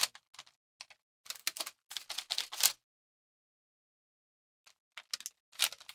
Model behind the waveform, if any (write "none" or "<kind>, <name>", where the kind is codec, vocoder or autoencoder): none